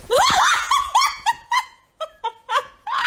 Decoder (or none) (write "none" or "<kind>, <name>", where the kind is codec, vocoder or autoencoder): vocoder, Vocos